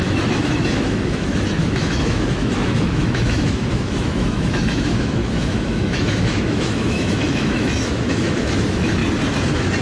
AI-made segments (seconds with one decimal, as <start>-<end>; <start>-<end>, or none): 0.0-9.0